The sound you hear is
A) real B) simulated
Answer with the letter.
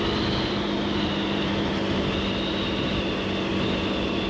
A